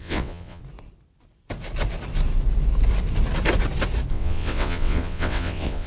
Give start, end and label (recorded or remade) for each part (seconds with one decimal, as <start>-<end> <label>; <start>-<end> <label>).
0.0-0.6 remade; 0.6-4.1 recorded; 4.1-5.9 remade